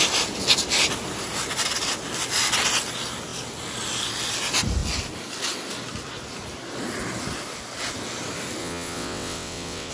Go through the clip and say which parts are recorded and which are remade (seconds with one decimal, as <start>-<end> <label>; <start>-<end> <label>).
0.0-8.6 recorded; 8.6-9.9 remade